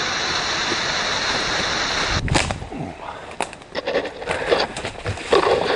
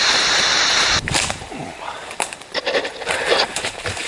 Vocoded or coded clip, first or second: second